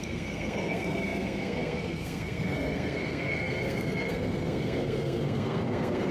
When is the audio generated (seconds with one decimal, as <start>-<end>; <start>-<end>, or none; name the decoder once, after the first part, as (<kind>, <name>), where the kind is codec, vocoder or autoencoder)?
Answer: 0.0-6.1 (codec, SNAC)